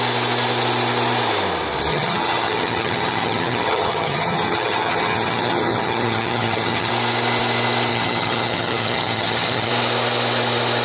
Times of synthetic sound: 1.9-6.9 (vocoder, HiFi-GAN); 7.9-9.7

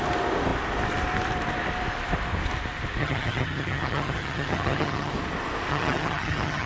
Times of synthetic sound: 3.0-5.1 (vocoder, HiFi-GAN); 5.7-6.7

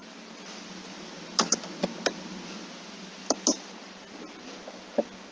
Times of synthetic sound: none

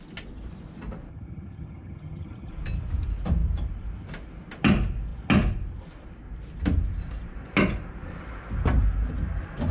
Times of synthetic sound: 1.1-2.5 (vocoder, HiFi-GAN)

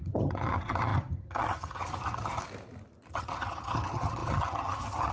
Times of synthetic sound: 0.0-2.4 (vocoder, HiFi-GAN); 3.1-5.1

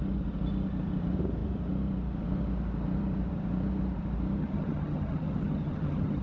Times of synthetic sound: 4.4-6.2 (vocoder, HiFi-GAN)

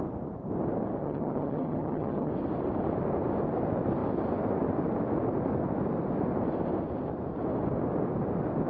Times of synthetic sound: 1.0-2.3 (vocoder, HiFi-GAN)